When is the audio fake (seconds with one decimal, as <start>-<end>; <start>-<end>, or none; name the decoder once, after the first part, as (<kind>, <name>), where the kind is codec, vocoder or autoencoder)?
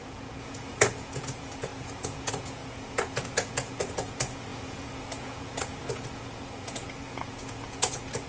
0.0-8.3 (vocoder, Vocos)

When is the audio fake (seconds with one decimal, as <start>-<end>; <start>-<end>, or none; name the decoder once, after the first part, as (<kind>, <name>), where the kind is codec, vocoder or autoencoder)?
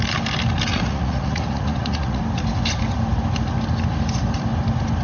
0.7-2.2 (vocoder, Vocos)